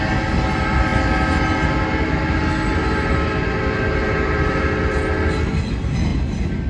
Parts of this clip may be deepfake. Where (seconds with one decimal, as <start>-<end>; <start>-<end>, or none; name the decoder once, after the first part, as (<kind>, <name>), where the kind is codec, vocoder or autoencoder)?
4.0-5.0 (vocoder, BigVGAN v2)